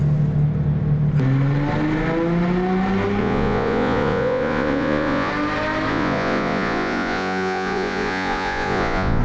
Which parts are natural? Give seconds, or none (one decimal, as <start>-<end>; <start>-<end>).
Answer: 0.0-3.2; 5.3-5.9